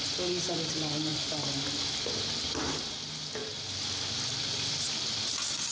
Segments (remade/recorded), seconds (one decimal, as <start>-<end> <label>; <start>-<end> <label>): 0.0-5.7 recorded